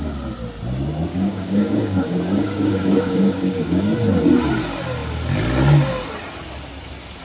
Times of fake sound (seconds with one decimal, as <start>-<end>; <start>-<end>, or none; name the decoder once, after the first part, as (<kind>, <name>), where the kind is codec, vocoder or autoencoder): 1.1-3.8 (codec, DAC)